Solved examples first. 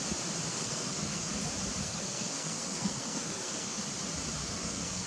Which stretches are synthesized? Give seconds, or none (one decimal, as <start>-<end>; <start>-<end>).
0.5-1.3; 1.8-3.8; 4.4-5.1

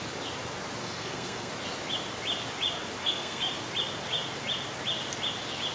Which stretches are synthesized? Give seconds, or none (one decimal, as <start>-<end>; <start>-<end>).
0.8-1.5; 3.0-3.5

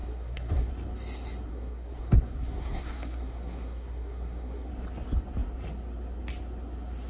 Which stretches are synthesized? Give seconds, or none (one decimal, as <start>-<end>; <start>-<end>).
0.0-0.7; 1.5-4.7